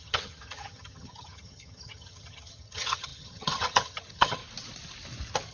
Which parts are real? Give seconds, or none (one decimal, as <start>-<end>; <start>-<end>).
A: 4.4-5.5